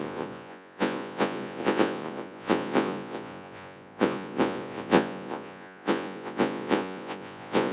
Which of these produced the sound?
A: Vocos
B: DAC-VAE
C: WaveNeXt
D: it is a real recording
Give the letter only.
A